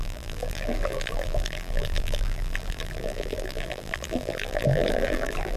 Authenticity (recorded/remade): remade